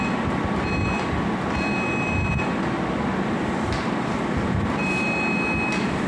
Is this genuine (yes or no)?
yes